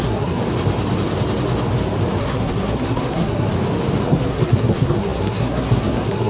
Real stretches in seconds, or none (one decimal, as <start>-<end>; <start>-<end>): 0.4-2.2; 3.5-4.0